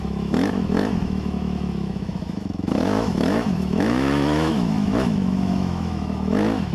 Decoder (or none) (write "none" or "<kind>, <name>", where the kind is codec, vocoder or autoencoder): autoencoder, DAC-VAE